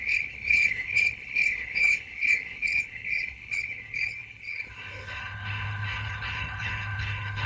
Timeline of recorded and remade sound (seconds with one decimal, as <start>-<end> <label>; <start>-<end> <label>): 0.0-7.5 remade